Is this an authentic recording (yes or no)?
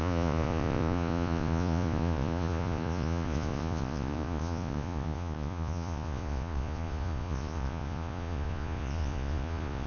no